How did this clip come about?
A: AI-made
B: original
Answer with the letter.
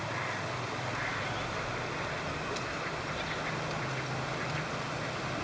B